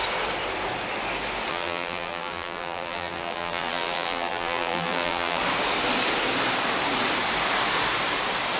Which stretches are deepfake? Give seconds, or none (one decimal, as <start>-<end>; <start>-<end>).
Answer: 1.5-5.4